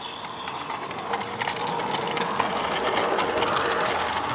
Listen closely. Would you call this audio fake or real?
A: real